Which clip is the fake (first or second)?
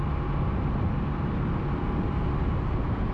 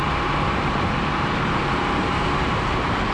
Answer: second